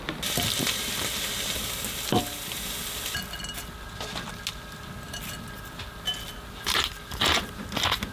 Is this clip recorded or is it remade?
recorded